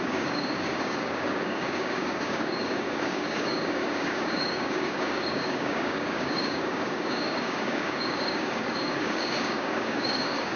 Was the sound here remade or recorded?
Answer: remade